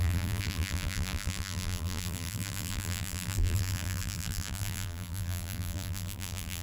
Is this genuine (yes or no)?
no